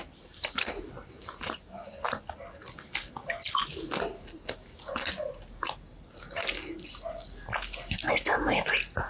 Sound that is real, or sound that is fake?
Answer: real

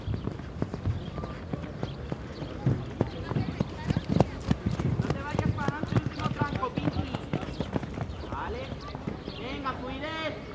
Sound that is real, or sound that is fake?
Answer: fake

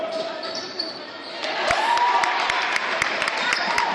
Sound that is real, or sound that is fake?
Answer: fake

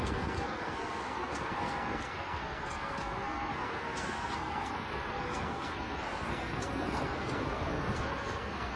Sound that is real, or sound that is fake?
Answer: fake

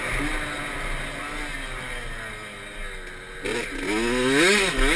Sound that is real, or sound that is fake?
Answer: real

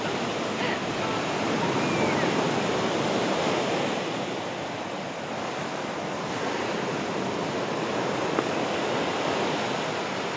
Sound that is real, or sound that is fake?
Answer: real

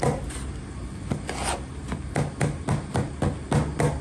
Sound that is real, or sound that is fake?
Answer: real